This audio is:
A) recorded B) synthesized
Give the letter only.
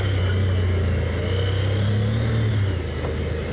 A